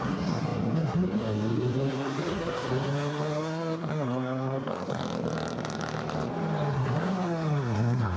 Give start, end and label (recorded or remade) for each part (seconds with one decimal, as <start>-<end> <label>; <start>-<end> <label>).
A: 0.0-5.0 remade; 5.0-6.7 recorded; 6.7-8.2 remade